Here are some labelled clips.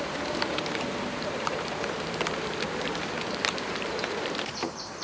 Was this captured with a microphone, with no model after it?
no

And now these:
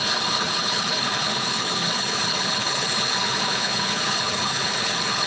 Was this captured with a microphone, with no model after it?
no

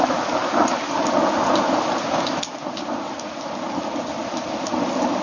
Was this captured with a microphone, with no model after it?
yes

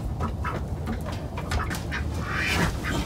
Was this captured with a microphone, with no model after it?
yes